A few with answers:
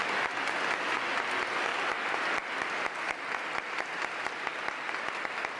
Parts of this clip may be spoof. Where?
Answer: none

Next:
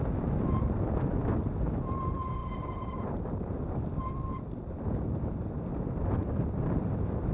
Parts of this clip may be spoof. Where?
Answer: 2.4-4.4; 6.2-6.8

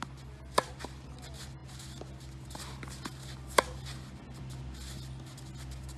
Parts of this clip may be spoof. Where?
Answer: none

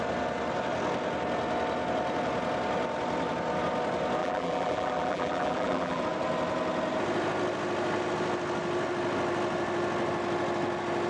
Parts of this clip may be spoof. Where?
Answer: 4.2-6.0

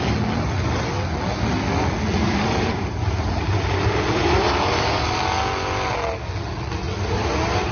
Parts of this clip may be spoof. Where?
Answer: 2.2-5.2